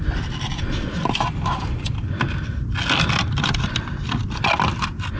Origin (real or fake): real